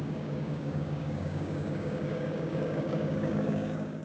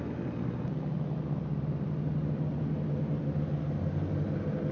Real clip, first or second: second